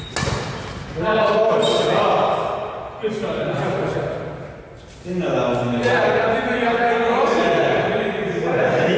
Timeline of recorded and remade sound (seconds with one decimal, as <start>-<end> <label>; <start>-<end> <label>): 0.0-9.0 recorded

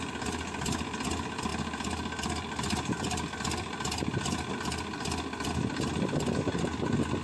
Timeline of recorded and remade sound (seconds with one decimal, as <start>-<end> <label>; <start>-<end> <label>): 0.0-7.2 recorded

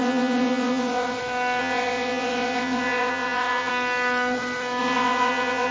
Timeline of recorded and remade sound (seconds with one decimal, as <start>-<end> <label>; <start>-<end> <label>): 0.0-1.2 remade; 1.2-1.6 recorded; 1.6-3.7 remade; 3.7-4.8 recorded; 4.8-5.7 remade

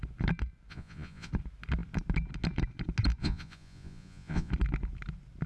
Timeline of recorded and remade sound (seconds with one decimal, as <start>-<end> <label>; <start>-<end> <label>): 0.0-0.7 recorded; 0.7-1.3 remade; 1.3-3.2 recorded; 3.2-4.5 remade; 4.5-5.5 recorded

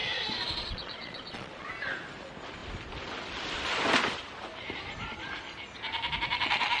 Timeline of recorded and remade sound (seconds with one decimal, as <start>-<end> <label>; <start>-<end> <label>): 0.0-1.7 remade; 1.7-6.8 recorded

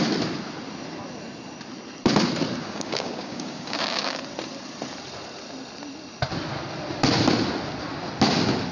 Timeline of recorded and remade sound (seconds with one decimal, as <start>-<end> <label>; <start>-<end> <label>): 0.0-2.6 recorded; 2.6-4.2 remade; 4.2-8.7 recorded

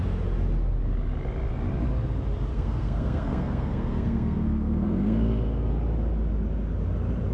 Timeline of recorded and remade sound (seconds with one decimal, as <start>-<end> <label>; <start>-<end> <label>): 0.0-2.5 recorded; 2.5-5.7 remade; 5.7-7.3 recorded

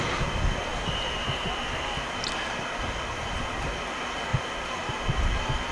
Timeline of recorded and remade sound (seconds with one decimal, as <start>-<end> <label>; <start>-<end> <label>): 0.0-5.7 recorded